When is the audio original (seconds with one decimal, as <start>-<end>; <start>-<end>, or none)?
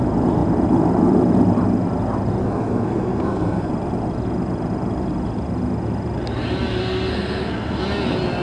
0.0-2.4; 3.7-6.8; 7.8-8.4